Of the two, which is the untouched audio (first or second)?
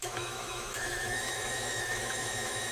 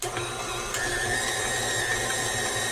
second